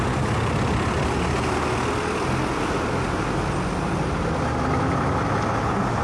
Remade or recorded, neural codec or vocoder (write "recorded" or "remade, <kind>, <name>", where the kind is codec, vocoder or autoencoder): recorded